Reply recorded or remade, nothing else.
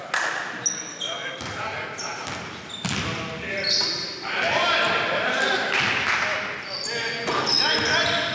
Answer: recorded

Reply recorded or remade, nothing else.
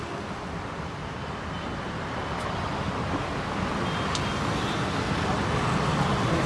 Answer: recorded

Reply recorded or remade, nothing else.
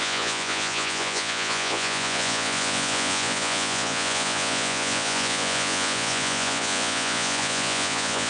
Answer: remade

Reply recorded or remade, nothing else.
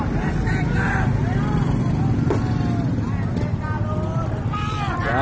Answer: recorded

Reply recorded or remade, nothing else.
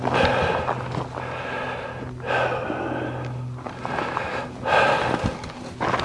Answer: recorded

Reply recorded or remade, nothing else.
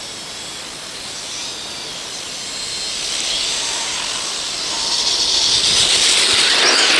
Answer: recorded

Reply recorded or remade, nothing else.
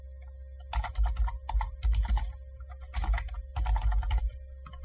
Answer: recorded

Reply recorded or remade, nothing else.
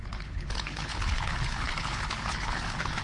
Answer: remade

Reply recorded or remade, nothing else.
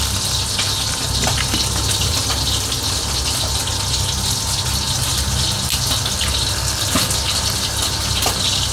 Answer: recorded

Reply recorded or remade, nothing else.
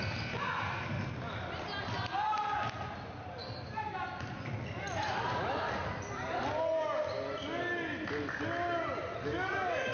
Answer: recorded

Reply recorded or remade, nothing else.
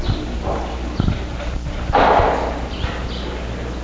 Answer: recorded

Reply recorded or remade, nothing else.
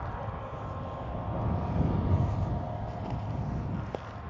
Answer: recorded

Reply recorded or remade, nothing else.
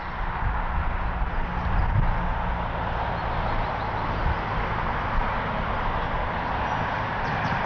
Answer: recorded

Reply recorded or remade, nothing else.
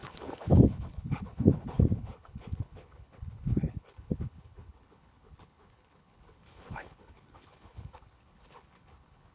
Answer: remade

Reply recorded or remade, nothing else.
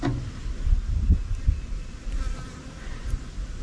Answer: recorded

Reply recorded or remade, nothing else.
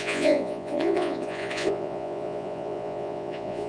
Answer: remade